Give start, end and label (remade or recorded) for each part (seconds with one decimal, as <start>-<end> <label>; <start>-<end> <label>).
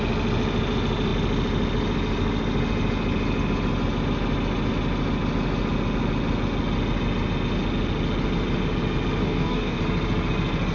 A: 0.0-9.2 recorded; 9.2-9.8 remade; 9.8-10.7 recorded